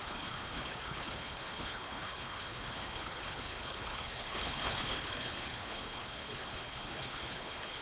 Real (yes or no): no